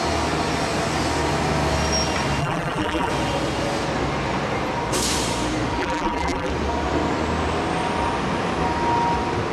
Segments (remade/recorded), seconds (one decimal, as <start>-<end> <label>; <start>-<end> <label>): 0.0-2.4 recorded; 2.4-3.1 remade; 3.1-5.8 recorded; 5.8-6.5 remade; 6.5-9.5 recorded